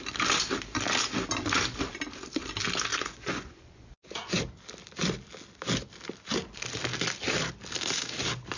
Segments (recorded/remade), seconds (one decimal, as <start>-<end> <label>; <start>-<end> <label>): 0.0-2.9 recorded; 2.9-4.4 remade; 4.4-8.6 recorded